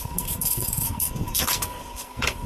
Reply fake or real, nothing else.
fake